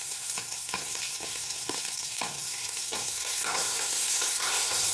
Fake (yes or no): yes